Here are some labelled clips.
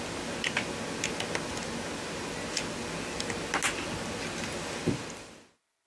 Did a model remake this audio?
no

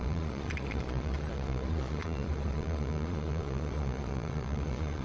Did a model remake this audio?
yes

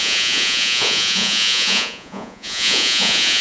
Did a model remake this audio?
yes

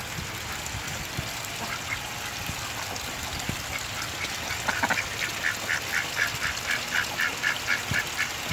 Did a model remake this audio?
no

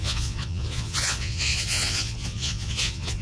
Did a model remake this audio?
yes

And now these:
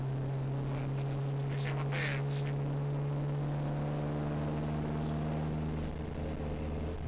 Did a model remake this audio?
no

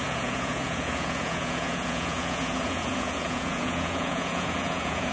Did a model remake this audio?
yes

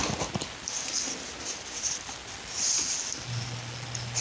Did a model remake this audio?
no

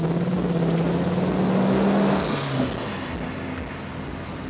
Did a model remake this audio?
no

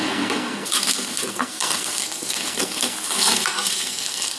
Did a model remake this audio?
yes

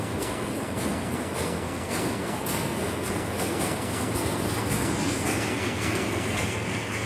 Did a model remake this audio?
yes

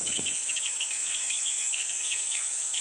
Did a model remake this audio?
yes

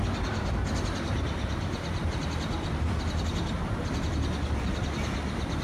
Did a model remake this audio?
no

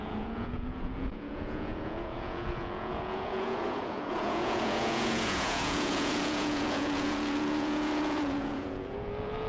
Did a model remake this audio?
yes